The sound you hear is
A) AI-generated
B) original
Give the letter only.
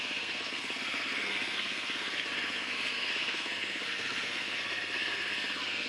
A